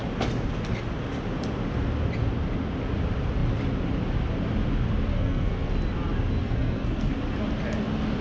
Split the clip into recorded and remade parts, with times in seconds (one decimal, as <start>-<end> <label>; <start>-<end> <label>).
0.0-5.1 recorded; 5.1-5.7 remade; 5.7-6.4 recorded; 6.4-7.1 remade; 7.1-8.2 recorded